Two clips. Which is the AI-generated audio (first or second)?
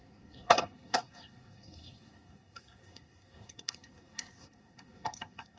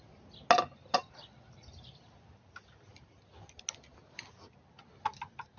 first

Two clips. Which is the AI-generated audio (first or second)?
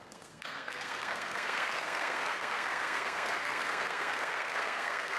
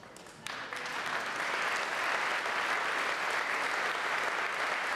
first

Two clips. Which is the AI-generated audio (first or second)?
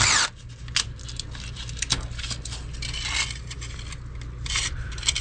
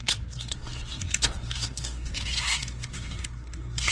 second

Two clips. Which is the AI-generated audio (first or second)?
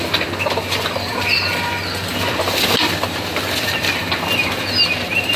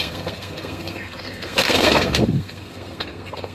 second